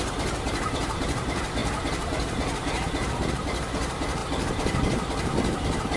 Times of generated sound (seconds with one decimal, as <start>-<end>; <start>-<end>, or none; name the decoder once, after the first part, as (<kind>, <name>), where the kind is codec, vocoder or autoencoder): 0.0-4.2 (vocoder, BigVGAN v2); 4.8-6.0